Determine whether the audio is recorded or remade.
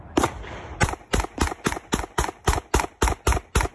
recorded